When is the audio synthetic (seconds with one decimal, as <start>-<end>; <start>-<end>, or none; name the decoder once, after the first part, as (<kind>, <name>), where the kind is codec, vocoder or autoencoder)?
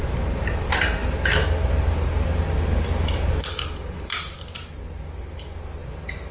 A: none